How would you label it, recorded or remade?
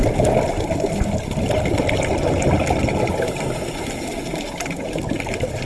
recorded